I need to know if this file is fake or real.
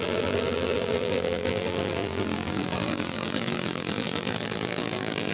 fake